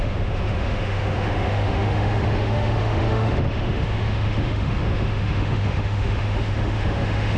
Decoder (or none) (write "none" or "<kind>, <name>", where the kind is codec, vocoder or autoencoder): autoencoder, DAC-VAE